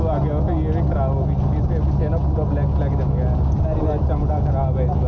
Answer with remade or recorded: recorded